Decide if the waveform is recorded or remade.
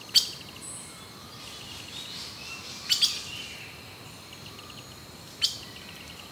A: recorded